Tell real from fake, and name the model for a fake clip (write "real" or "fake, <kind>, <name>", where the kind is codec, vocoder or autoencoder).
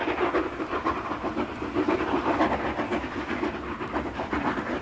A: real